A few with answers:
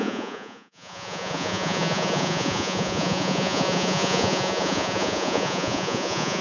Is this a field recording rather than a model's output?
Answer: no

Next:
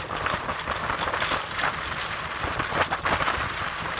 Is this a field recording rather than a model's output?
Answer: yes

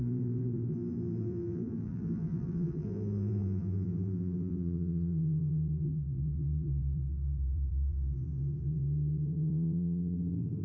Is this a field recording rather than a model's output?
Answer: no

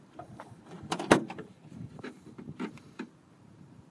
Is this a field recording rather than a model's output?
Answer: no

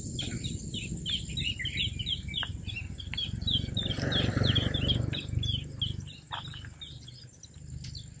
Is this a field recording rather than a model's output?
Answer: yes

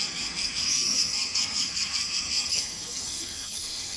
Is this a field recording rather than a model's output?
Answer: no